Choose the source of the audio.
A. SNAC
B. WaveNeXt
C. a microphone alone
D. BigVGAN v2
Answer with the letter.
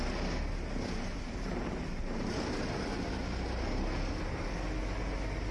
C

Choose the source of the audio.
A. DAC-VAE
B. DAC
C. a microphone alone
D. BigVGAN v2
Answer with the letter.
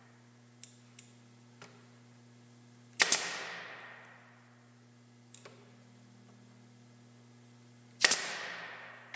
C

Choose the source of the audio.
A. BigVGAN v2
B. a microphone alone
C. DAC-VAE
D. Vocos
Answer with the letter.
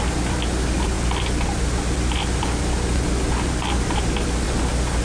B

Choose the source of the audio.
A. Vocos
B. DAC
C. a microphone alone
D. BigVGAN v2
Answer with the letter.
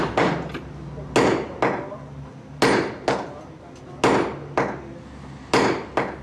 C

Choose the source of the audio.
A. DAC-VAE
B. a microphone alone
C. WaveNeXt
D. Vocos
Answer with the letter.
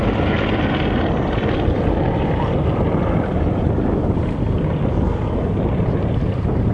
B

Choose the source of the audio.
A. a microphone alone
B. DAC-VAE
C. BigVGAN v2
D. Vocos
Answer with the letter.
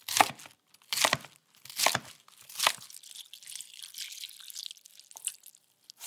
A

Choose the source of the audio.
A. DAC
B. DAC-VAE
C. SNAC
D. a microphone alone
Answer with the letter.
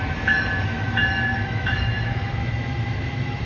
B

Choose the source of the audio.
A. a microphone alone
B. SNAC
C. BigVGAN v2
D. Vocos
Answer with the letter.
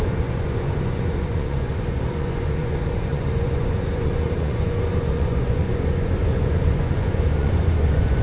D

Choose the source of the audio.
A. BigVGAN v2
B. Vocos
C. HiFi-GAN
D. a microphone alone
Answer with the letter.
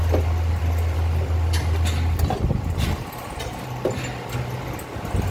D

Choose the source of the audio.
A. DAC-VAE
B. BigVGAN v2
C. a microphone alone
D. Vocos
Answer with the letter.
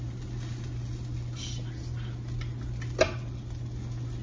C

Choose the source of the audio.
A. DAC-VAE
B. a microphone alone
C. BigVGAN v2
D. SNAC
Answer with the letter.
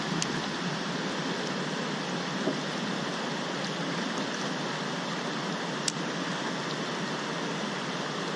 B